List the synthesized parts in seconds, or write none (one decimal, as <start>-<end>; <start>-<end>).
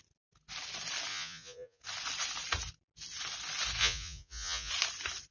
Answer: 1.1-1.8; 3.8-4.7